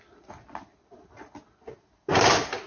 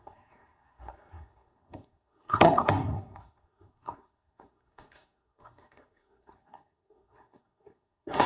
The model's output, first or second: second